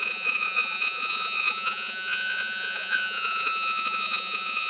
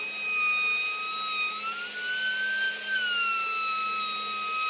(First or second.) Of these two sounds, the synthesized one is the first